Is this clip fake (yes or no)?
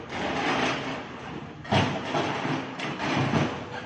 no